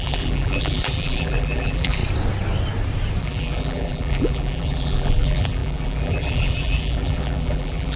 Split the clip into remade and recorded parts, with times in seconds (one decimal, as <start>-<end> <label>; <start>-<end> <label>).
0.0-2.0 remade; 2.0-3.2 recorded; 3.2-8.0 remade